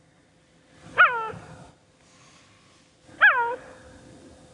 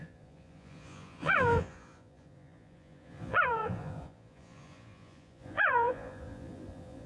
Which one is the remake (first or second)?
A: second